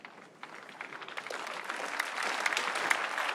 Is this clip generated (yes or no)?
no